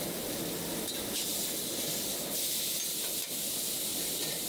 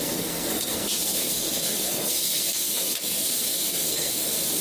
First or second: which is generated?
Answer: second